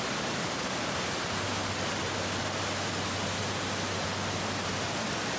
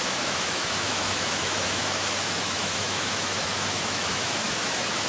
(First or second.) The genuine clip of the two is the first